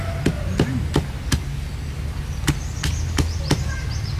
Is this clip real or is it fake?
real